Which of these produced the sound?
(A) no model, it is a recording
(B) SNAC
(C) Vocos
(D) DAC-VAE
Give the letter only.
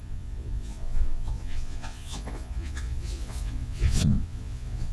C